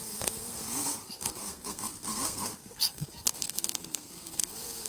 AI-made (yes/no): yes